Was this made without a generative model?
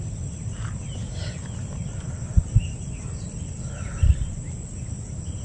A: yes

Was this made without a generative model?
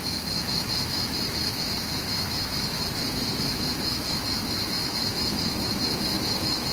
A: no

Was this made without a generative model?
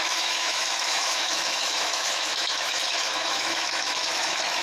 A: no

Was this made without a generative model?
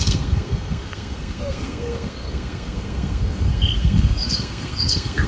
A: no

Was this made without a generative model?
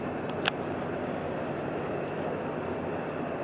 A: yes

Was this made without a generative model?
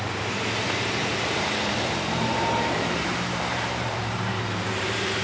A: no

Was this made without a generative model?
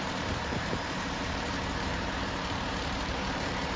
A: no